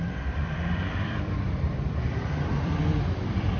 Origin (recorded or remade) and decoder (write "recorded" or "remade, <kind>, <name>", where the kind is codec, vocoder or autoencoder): remade, vocoder, BigVGAN v2